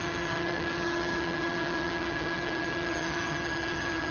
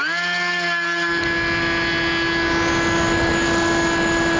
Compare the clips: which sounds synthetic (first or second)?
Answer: first